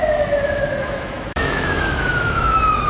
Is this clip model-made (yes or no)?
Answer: yes